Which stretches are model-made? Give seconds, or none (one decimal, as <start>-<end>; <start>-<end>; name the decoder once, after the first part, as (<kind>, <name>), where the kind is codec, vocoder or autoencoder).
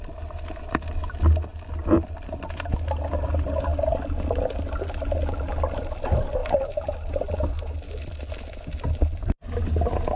none